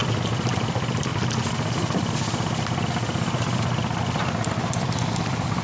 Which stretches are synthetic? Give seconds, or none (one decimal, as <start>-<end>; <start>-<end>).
none